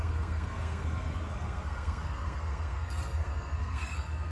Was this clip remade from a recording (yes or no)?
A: yes